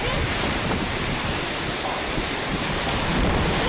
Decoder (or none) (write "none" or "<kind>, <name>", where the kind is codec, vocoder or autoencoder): vocoder, BigVGAN v2